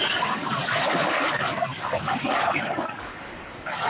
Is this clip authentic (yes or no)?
no